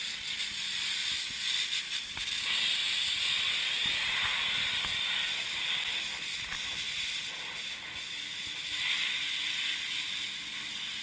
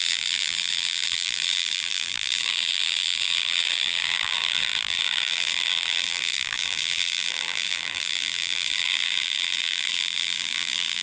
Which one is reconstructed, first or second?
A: second